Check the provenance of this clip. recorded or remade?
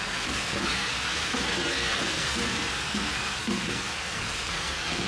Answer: remade